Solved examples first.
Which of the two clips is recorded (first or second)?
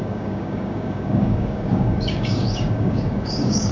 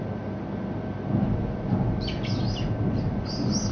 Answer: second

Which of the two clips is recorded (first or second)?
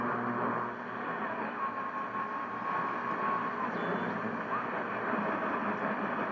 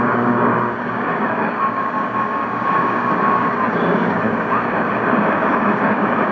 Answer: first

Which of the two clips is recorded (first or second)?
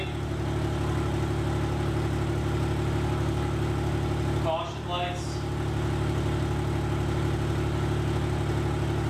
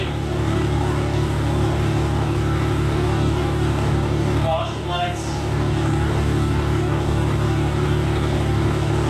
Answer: first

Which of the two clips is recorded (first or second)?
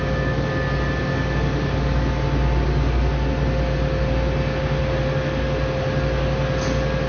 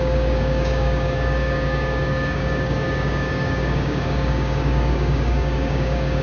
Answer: first